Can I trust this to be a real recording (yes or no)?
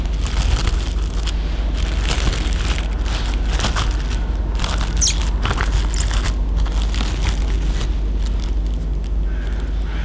yes